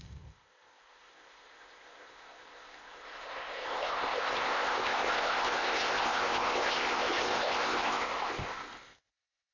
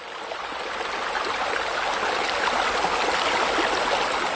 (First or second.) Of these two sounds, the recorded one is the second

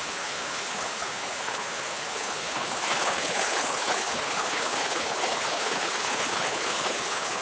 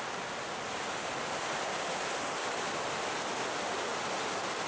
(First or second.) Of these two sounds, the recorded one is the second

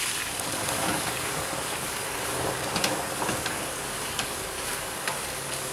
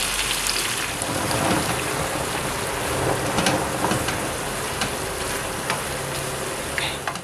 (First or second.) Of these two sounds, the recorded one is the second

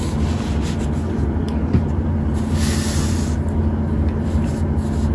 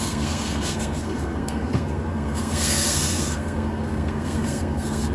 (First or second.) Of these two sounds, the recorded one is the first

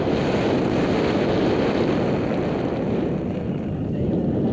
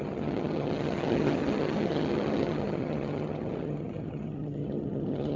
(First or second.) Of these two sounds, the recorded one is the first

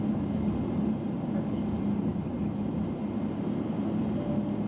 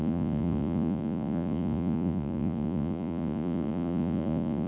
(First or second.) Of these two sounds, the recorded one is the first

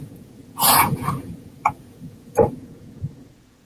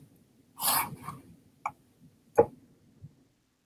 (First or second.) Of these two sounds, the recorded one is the second